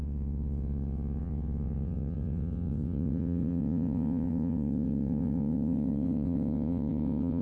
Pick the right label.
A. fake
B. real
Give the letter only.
A